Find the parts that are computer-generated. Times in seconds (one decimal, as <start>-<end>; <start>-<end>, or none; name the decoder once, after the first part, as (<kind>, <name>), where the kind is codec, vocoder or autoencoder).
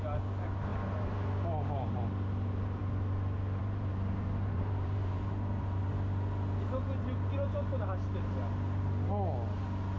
3.6-5.9 (vocoder, BigVGAN v2)